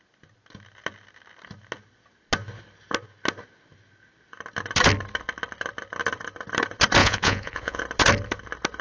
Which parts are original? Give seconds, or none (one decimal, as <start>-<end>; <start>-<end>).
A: 0.0-7.0; 7.8-8.8